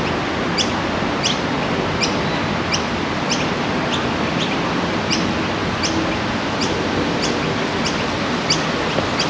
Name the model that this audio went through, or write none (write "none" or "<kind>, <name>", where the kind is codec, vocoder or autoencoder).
none